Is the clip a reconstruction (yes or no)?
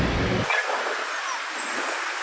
no